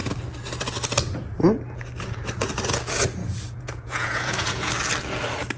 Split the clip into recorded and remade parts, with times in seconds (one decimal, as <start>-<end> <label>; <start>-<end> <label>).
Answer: 0.0-3.2 recorded; 3.2-4.7 remade; 4.7-5.6 recorded